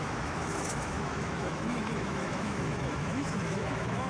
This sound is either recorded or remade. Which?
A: remade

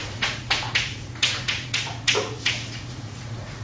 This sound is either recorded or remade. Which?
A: remade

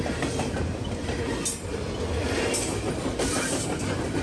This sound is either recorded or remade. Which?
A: recorded